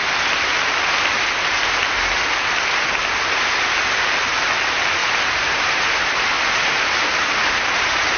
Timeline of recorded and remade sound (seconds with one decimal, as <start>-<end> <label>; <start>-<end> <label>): 0.0-5.0 recorded; 5.0-8.2 remade